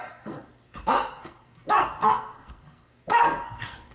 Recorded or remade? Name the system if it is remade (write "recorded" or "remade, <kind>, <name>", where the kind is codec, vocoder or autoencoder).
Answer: remade, codec, SNAC